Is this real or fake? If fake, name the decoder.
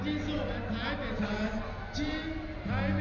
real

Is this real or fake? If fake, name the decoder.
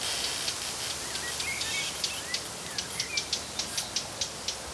real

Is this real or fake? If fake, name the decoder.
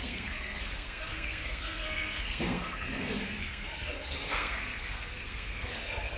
fake, codec, SNAC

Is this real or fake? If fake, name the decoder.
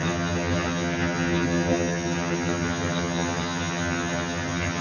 fake, vocoder, HiFi-GAN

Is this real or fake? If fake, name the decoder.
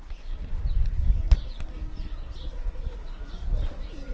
real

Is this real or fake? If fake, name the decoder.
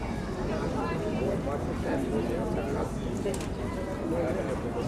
real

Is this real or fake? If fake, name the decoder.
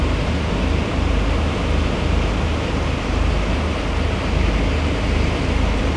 real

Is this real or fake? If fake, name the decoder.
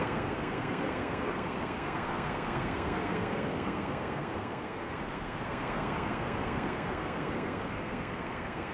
fake, codec, SNAC